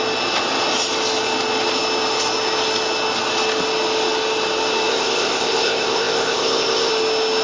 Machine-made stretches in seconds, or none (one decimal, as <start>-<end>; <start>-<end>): 4.9-6.9